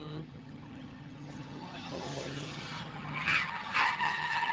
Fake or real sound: fake